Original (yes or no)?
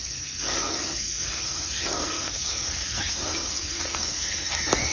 no